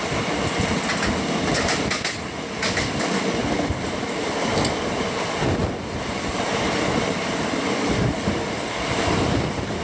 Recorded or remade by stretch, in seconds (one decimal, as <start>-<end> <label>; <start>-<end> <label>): 0.0-9.8 recorded